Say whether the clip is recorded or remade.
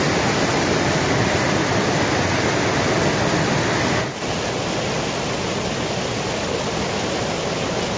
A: recorded